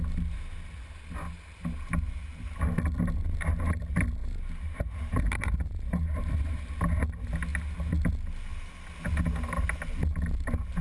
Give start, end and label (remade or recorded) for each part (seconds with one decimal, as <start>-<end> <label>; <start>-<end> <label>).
0.0-4.2 recorded; 4.2-6.4 remade; 6.4-10.8 recorded